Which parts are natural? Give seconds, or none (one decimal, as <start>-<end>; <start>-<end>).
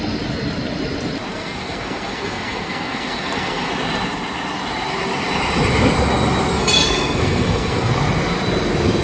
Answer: 0.0-1.3; 3.7-6.5; 7.9-9.0